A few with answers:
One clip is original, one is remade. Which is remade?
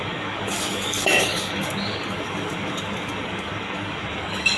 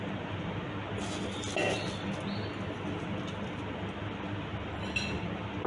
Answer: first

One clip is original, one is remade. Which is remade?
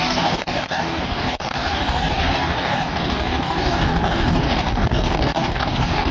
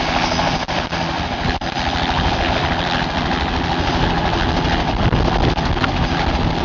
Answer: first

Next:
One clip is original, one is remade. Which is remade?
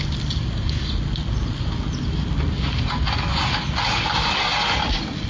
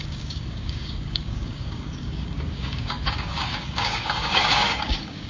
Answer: second